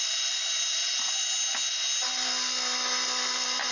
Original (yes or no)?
yes